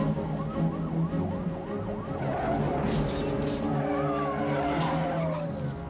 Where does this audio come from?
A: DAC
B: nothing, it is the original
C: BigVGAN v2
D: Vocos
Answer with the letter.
B